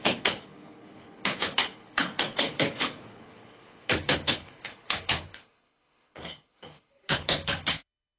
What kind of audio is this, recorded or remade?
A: remade